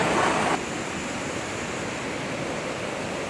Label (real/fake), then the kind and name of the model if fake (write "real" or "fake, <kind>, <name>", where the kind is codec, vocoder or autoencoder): real